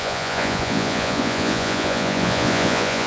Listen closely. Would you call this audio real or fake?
fake